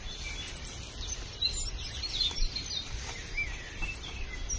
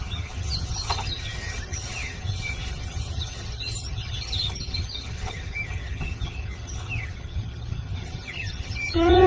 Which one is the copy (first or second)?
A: second